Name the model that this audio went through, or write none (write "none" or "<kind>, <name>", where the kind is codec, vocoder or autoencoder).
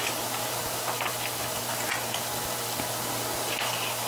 none